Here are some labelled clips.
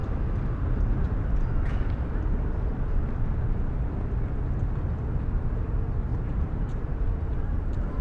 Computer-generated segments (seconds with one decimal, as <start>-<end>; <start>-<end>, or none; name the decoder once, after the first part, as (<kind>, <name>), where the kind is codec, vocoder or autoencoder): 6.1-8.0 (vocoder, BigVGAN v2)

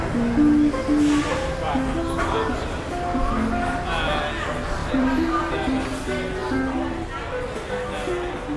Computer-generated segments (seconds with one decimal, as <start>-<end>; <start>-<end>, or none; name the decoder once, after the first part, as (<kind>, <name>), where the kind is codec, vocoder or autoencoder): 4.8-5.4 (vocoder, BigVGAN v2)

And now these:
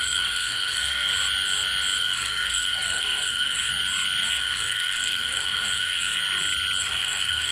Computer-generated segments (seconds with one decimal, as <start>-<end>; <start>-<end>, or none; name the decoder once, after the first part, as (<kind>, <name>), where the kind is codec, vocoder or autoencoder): 0.0-1.1 (codec, SNAC); 2.0-3.7; 4.3-6.2; 6.8-7.5